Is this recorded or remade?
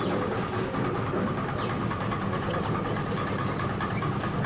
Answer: recorded